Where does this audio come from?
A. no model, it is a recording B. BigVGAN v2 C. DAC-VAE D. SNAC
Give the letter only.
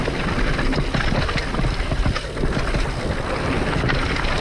A